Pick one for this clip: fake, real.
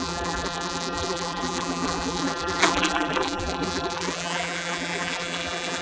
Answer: fake